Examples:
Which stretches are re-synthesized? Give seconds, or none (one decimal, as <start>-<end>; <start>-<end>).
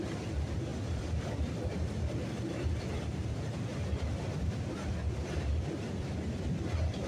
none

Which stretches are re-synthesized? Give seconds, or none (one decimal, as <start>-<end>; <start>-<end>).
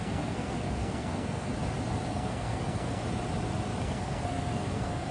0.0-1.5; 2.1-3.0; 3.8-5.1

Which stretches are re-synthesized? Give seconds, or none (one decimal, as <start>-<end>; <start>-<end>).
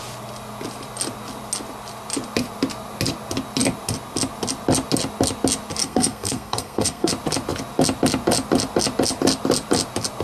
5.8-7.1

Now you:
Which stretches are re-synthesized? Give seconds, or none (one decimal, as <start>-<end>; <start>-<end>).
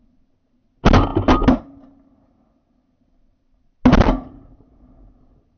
none